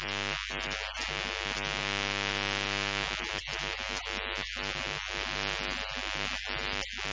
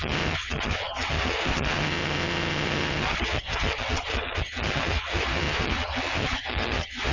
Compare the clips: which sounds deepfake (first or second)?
second